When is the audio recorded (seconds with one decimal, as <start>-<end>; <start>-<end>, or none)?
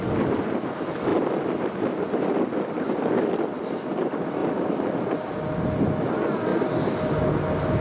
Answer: 0.0-1.1; 4.0-4.4; 5.1-7.8